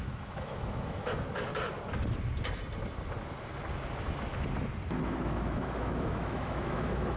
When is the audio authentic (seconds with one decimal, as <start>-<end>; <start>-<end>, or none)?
1.1-5.2